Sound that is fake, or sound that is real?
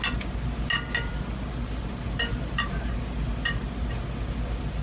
real